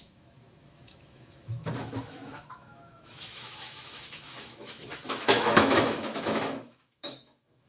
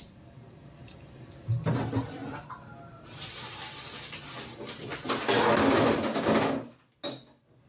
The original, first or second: second